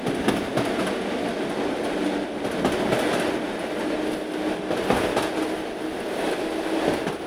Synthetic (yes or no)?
no